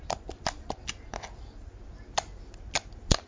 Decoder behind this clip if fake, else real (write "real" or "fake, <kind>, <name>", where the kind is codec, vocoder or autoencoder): real